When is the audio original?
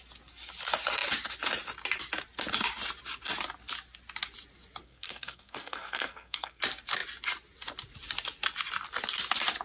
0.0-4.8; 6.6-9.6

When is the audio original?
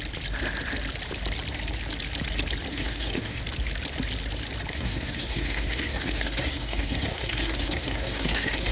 0.0-2.7; 3.4-4.7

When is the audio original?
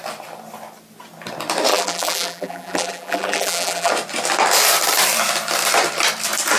0.0-1.7; 3.9-6.6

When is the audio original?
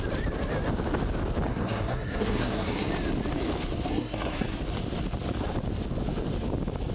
0.0-1.5; 2.9-3.9; 4.6-6.9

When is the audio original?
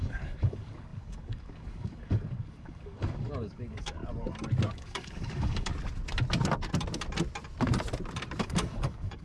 4.0-4.7; 5.7-8.4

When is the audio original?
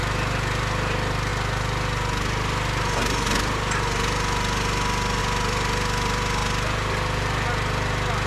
0.0-8.3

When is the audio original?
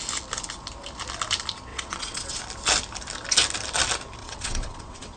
0.0-1.7; 2.4-4.2